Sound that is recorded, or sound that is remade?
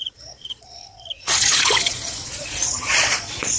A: remade